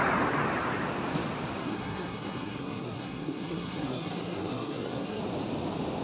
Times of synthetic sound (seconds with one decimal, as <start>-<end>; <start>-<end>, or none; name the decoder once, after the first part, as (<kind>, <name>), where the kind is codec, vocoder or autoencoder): 1.6-5.2 (codec, SNAC)